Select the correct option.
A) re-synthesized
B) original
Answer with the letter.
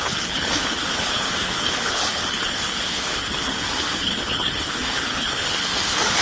A